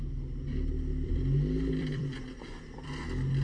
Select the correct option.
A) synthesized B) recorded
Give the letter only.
A